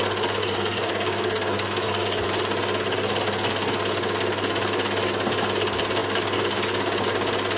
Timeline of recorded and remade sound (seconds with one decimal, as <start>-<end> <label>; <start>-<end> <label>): 0.0-0.4 recorded; 0.4-2.3 remade; 2.3-7.6 recorded